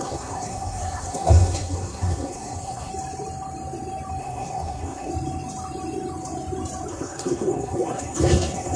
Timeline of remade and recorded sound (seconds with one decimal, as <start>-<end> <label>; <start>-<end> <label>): 0.0-2.9 remade; 2.9-4.2 recorded; 4.2-5.1 remade; 5.1-6.9 recorded; 6.9-8.8 remade